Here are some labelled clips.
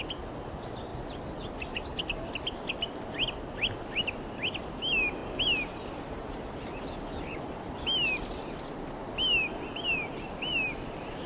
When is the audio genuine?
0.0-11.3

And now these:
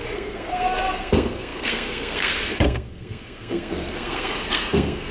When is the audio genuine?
none

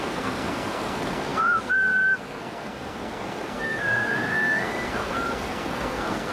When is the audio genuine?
none

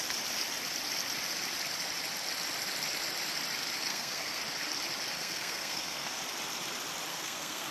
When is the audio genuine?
0.0-3.9; 4.4-5.2; 6.2-7.1

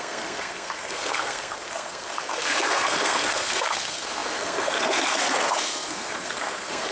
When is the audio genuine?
none

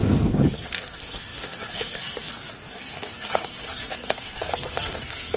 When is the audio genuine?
none